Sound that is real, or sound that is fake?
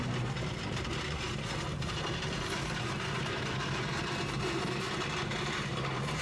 fake